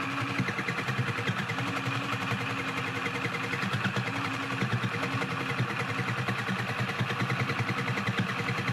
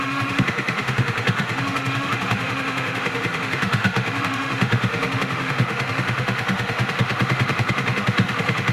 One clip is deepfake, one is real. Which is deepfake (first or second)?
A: second